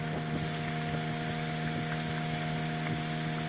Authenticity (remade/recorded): recorded